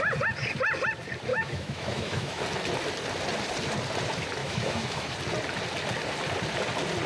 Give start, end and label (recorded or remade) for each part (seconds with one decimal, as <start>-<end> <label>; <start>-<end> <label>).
0.0-1.3 recorded; 1.3-2.4 remade; 2.4-4.4 recorded; 4.4-5.1 remade; 5.1-7.1 recorded

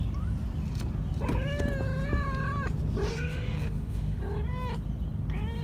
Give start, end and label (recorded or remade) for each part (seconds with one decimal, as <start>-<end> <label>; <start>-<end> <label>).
0.0-3.1 recorded; 3.1-4.2 remade; 4.2-5.6 recorded

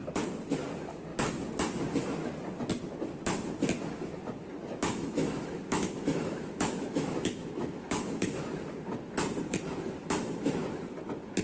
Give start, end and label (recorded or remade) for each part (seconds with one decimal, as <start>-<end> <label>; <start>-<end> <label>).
0.0-4.6 recorded; 4.6-8.4 remade; 8.4-11.4 recorded

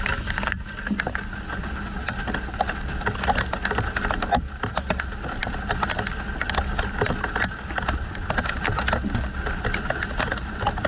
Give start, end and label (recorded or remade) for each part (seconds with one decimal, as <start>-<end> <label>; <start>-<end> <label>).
0.0-10.9 recorded